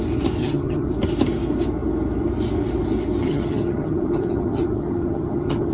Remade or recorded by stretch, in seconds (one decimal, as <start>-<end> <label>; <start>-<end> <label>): 0.0-0.4 recorded; 0.4-0.9 remade; 0.9-3.2 recorded; 3.2-5.7 remade